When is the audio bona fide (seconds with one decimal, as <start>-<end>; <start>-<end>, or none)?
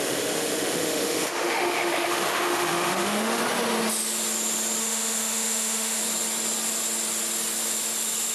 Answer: 3.4-4.8; 6.0-8.3